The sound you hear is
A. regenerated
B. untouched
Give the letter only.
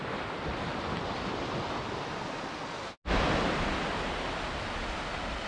B